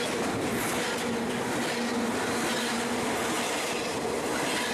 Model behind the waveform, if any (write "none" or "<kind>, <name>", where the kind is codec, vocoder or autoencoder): none